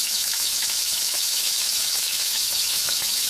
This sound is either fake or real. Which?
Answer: fake